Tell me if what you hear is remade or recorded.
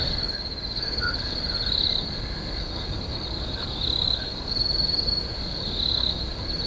remade